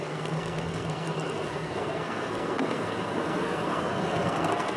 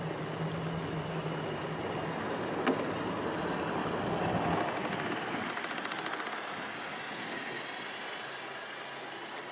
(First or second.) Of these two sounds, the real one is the second